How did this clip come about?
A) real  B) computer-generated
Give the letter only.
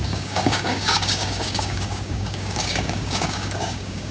B